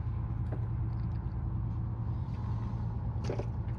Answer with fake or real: real